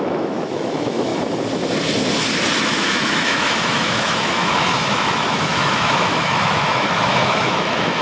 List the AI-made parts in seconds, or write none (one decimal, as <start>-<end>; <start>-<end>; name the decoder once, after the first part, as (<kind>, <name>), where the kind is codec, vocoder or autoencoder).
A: 0.0-1.1 (autoencoder, DAC-VAE); 2.6-8.0